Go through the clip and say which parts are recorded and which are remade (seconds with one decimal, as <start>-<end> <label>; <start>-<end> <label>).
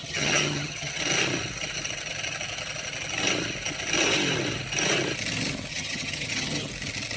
0.0-1.0 remade; 1.0-5.7 recorded; 5.7-6.7 remade; 6.7-7.2 recorded